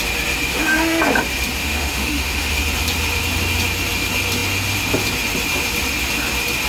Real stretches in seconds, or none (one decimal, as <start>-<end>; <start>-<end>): 0.0-0.5; 1.0-1.6; 2.6-6.7